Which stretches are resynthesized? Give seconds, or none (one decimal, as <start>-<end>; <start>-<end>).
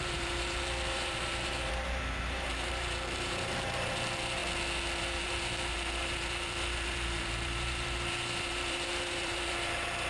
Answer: 0.0-4.4; 5.0-10.1